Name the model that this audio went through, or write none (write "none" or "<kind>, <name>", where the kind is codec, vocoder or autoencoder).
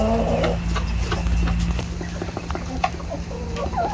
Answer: none